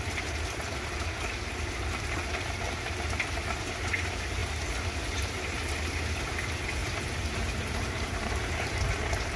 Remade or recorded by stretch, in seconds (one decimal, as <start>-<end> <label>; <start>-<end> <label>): 0.0-6.8 recorded; 6.8-8.8 remade; 8.8-9.4 recorded